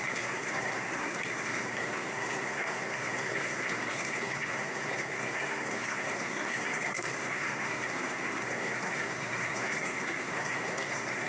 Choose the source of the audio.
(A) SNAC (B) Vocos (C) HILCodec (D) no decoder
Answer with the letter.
A